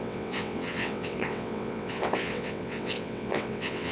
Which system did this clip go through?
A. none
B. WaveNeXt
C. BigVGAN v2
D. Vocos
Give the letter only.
B